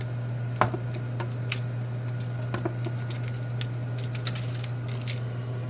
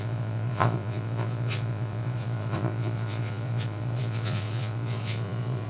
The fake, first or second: second